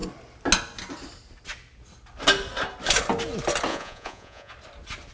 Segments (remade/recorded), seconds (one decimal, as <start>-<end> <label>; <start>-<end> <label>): 0.0-3.7 recorded; 3.7-4.5 remade; 4.5-5.1 recorded